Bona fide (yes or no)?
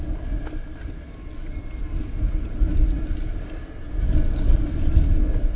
yes